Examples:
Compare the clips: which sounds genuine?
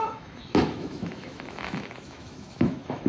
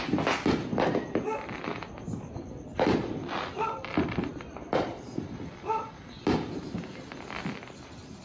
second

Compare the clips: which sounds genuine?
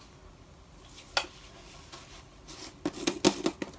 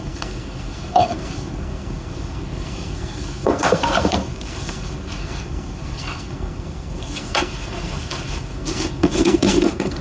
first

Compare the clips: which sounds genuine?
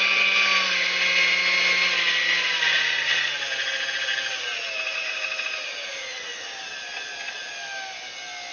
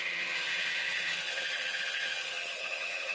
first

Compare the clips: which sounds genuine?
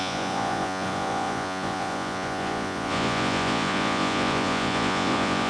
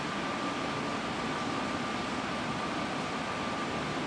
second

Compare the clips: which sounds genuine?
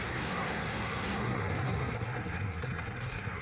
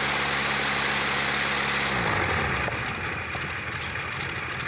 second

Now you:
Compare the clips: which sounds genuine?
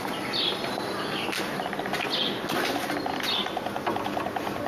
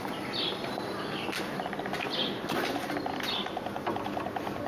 first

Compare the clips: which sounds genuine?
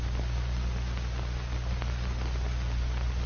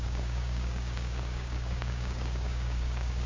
first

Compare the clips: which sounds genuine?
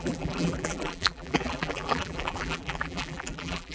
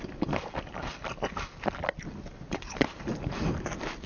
second